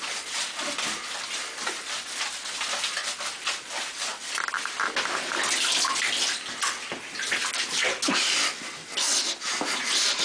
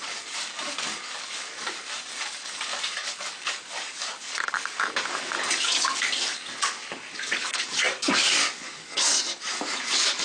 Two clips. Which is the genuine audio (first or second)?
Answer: first